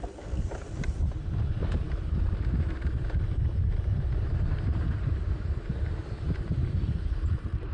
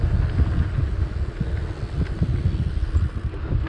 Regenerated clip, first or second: first